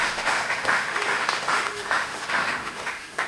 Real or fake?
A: fake